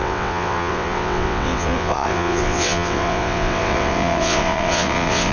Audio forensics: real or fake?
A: fake